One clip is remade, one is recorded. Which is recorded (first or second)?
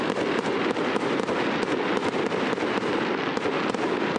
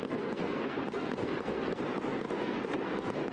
first